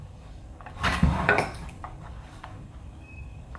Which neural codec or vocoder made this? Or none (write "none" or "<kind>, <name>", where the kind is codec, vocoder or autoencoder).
codec, DAC